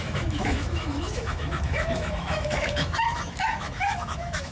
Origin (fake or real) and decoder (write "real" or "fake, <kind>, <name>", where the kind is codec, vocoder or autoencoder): fake, autoencoder, DAC-VAE